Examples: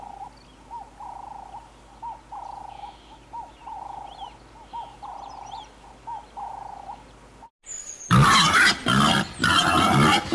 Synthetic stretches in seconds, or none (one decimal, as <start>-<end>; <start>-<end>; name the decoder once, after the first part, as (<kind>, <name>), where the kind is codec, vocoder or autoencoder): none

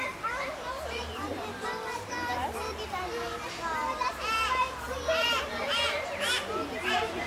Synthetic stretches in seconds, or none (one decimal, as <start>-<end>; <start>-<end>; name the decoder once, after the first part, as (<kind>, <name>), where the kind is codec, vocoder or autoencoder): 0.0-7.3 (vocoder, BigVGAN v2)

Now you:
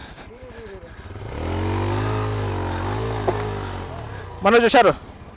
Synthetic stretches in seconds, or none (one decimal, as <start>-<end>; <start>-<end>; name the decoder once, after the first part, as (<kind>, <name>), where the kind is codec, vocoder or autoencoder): none

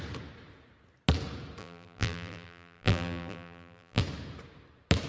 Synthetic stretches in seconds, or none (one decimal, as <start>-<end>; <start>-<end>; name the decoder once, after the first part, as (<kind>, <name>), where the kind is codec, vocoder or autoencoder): 1.6-4.0 (vocoder, BigVGAN v2)

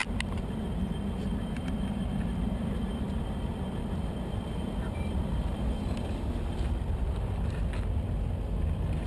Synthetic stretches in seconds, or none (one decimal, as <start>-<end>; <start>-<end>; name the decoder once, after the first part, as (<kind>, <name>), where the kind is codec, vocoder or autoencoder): 2.3-9.1 (vocoder, BigVGAN v2)

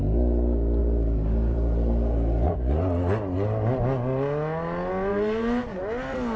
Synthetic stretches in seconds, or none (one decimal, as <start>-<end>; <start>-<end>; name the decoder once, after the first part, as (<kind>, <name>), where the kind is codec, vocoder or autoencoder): 0.8-2.5 (vocoder, BigVGAN v2); 5.1-5.8